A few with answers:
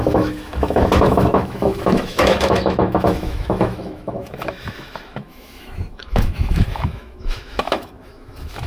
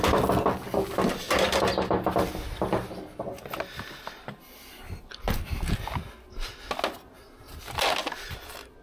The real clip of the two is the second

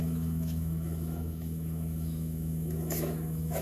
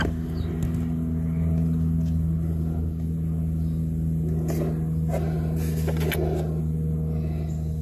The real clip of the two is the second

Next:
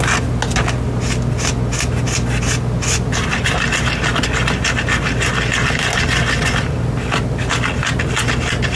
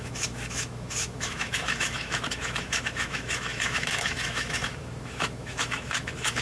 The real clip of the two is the first